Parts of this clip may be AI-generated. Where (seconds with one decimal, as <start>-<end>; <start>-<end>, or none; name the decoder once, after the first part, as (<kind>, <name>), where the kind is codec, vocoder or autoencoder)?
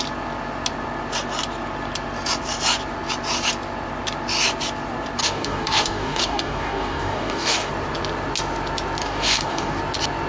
5.2-7.7 (codec, DAC); 9.0-9.8